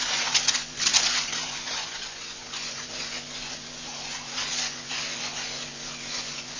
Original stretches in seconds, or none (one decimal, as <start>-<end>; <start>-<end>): none